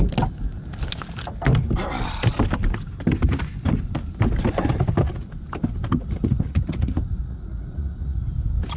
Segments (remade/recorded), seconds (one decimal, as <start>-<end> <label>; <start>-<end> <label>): 0.0-6.0 recorded; 6.0-8.2 remade; 8.2-8.8 recorded